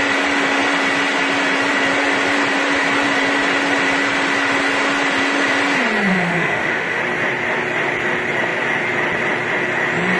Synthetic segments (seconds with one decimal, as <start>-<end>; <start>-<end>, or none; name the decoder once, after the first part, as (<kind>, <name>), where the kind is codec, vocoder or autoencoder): 6.1-7.0 (autoencoder, DAC-VAE)